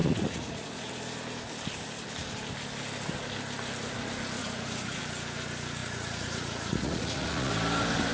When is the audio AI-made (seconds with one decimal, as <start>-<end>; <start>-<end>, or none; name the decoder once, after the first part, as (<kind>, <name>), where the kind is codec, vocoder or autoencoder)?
0.0-0.9 (vocoder, Vocos); 4.4-5.0; 5.8-7.5

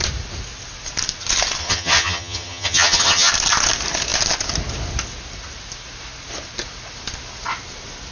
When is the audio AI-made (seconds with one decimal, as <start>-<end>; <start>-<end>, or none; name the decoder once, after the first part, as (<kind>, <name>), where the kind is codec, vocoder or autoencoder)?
1.6-3.3 (vocoder, HiFi-GAN)

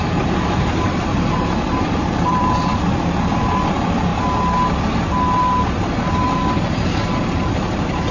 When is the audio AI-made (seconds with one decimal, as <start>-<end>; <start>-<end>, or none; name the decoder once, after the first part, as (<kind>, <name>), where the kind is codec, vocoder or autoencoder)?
0.0-2.7 (vocoder, BigVGAN v2); 3.3-4.1; 6.0-6.4; 7.2-8.1

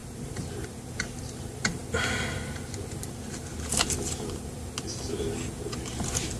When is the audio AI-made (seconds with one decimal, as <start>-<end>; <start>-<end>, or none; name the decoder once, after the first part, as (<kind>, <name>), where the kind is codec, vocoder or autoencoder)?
0.0-1.4 (vocoder, BigVGAN v2)